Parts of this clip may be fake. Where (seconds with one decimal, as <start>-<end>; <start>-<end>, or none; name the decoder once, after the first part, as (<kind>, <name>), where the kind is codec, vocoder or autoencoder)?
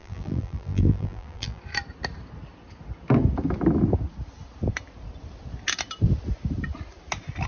0.0-1.6 (vocoder, BigVGAN v2)